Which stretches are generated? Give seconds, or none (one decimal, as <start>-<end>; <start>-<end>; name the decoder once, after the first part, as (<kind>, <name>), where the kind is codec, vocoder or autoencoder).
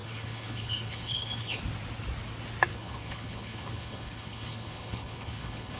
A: 0.0-1.6 (codec, HILCodec); 2.7-5.8